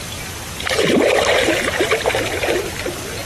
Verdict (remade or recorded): recorded